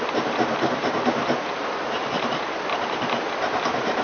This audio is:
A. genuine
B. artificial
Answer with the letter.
B